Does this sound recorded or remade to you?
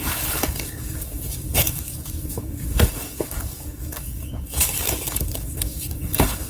remade